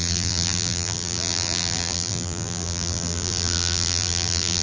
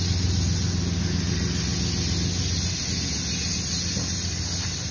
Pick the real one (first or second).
second